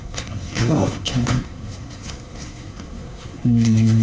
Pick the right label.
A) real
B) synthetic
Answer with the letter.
B